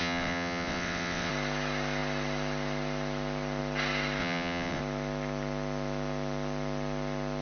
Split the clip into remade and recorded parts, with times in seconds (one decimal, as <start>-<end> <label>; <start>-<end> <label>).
0.0-1.3 remade; 1.3-4.2 recorded; 4.2-4.8 remade; 4.8-7.4 recorded